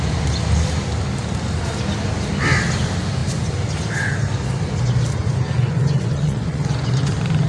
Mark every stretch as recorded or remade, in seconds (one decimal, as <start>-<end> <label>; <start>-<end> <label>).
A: 0.0-5.2 recorded; 5.2-7.1 remade; 7.1-7.5 recorded